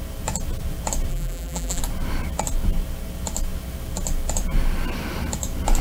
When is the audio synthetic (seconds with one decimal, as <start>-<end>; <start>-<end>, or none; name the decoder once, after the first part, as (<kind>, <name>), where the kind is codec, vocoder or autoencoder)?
1.1-1.8 (vocoder, BigVGAN v2)

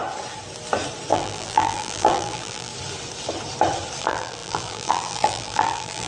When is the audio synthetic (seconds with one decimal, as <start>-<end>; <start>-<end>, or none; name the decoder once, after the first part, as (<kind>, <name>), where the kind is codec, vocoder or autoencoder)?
1.1-2.7 (vocoder, BigVGAN v2); 4.0-6.1

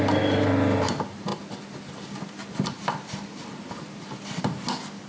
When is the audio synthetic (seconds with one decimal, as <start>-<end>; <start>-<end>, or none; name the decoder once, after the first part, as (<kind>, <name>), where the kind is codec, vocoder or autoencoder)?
none